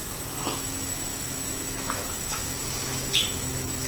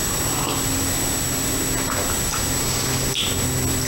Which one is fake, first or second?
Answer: first